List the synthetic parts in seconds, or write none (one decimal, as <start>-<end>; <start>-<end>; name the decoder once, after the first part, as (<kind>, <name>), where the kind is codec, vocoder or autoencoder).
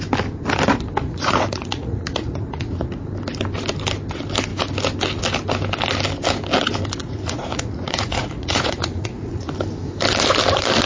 1.0-3.0 (vocoder, Vocos); 7.0-9.5